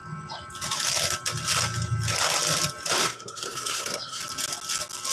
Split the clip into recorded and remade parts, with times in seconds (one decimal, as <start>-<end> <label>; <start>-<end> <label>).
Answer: 0.0-3.0 recorded; 3.0-4.2 remade; 4.2-5.1 recorded